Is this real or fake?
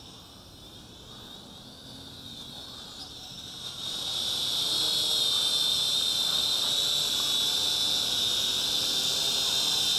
real